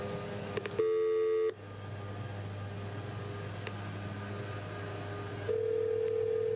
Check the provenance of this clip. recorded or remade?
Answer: recorded